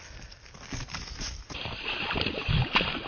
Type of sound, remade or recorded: remade